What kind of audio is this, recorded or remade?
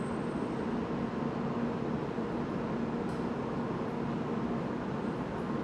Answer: recorded